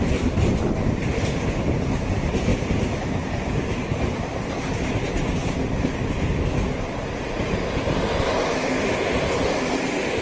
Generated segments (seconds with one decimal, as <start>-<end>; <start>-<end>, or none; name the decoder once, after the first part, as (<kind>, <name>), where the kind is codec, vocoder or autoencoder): none